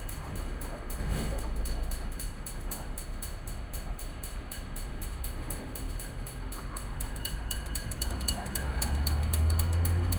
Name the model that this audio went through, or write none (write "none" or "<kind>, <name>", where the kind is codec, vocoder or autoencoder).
autoencoder, DAC-VAE